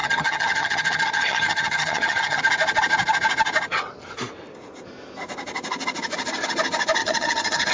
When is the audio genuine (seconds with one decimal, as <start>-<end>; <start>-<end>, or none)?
2.4-7.0